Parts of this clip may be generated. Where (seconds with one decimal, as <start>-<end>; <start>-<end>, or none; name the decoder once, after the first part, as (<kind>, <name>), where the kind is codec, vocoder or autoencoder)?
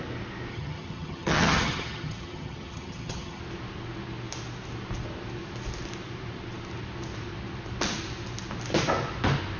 0.5-3.4 (vocoder, HiFi-GAN)